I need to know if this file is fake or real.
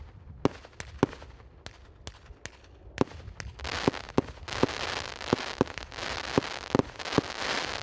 real